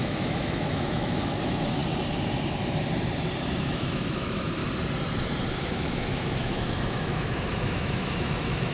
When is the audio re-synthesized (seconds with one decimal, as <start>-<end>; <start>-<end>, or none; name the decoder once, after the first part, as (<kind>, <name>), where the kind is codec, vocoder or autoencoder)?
0.0-1.8 (autoencoder, DAC-VAE); 3.6-4.6; 5.5-8.7